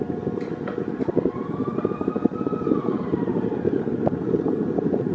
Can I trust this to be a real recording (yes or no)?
no